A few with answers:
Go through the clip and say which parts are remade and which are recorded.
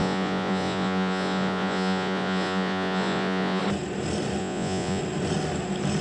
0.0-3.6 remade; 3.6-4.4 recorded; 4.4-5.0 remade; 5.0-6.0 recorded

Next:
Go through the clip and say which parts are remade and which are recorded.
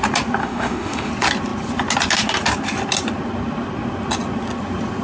0.0-0.4 recorded; 0.4-1.1 remade; 1.1-5.0 recorded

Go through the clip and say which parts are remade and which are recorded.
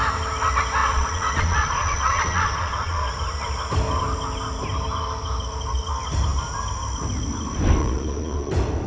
0.0-0.8 recorded; 0.8-3.1 remade; 3.1-7.8 recorded; 7.8-8.5 remade; 8.5-8.9 recorded